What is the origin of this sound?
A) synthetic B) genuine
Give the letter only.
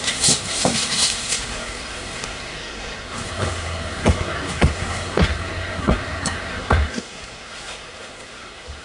A